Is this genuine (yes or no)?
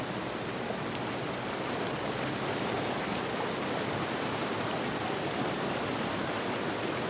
yes